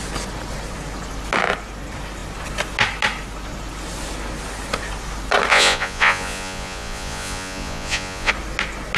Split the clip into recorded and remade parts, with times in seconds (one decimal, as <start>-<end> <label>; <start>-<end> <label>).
0.0-5.5 recorded; 5.5-8.3 remade; 8.3-9.0 recorded